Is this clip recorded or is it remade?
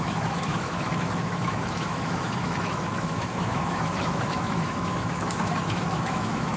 remade